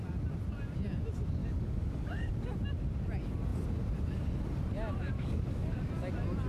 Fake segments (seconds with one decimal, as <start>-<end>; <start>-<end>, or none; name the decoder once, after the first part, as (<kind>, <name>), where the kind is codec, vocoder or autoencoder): 1.4-2.3 (codec, DAC); 5.0-5.8